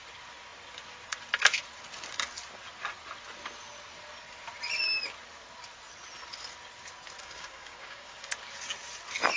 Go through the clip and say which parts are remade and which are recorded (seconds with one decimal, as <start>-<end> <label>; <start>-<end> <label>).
0.0-7.2 recorded; 7.2-8.3 remade; 8.3-9.4 recorded